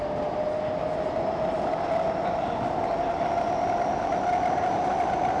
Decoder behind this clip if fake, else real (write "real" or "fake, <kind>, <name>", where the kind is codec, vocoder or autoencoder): real